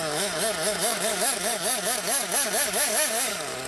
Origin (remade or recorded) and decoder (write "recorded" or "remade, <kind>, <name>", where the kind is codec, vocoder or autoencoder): remade, codec, DAC